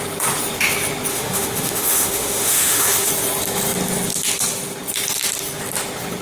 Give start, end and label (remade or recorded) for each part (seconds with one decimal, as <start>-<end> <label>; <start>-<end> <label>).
0.0-1.1 recorded; 1.1-3.1 remade; 3.1-6.2 recorded